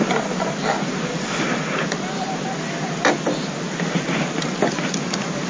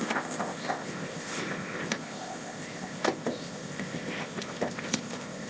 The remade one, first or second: second